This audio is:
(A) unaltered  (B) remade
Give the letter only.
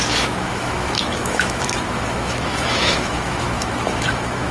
B